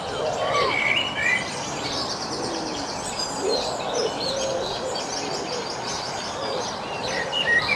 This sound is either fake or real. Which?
fake